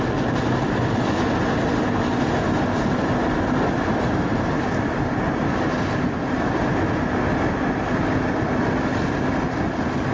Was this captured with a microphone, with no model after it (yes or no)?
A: yes